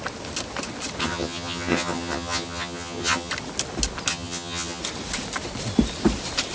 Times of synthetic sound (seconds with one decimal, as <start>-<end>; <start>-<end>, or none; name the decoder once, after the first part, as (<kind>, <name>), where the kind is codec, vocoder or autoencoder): 1.0-3.3 (vocoder, HiFi-GAN); 4.1-4.8